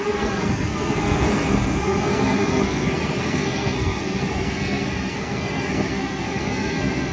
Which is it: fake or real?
fake